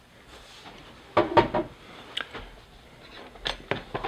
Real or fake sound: real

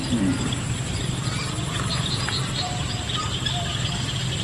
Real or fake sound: real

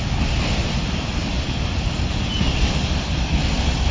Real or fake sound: fake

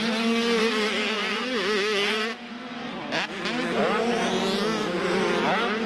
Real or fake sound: real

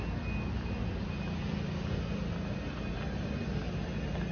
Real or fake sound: real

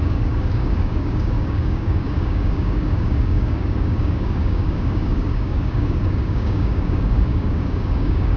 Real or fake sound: fake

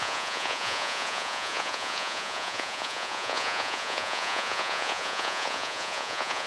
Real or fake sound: fake